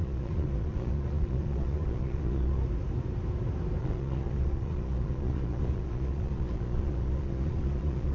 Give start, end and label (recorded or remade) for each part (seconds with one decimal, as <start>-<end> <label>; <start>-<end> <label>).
0.0-2.6 remade; 2.6-3.8 recorded; 3.8-8.1 remade